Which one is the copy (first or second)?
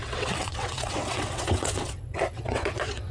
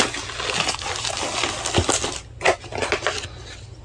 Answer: first